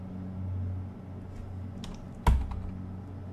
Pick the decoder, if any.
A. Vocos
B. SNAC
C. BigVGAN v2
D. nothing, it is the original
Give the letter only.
D